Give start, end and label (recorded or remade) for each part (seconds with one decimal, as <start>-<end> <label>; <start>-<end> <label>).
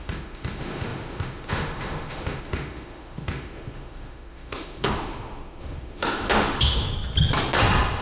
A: 0.0-6.9 remade; 6.9-8.0 recorded